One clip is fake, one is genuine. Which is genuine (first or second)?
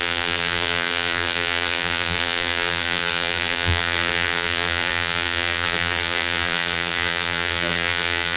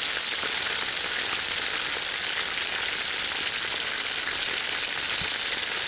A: second